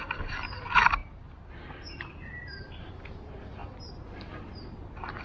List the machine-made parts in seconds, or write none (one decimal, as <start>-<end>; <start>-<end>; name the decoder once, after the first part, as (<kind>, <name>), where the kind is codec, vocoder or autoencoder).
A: 0.0-3.6 (vocoder, BigVGAN v2); 4.3-5.2